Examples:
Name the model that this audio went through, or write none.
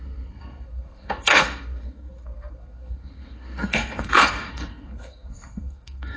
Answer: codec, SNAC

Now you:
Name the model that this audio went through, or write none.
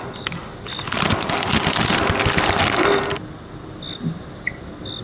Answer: none